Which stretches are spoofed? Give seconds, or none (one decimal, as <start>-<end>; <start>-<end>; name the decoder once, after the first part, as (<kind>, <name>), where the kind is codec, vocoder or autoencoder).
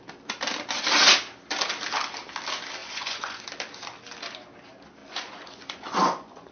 2.8-3.4 (vocoder, Vocos); 5.0-6.5